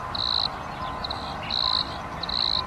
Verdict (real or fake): real